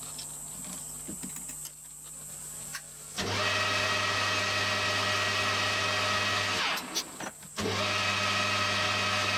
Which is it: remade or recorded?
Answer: recorded